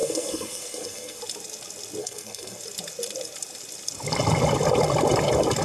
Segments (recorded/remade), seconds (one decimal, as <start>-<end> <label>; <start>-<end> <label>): 0.0-1.2 remade; 1.2-2.0 recorded; 2.0-2.6 remade; 2.6-5.6 recorded